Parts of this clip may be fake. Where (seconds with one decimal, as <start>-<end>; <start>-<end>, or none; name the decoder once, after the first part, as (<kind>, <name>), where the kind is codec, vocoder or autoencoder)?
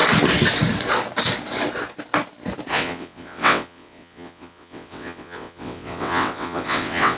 2.7-7.2 (vocoder, WaveNeXt)